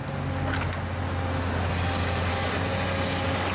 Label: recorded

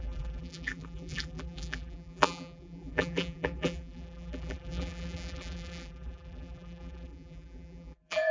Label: remade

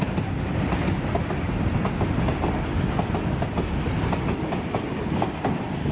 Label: recorded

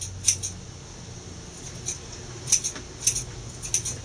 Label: recorded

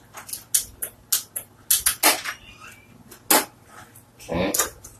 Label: recorded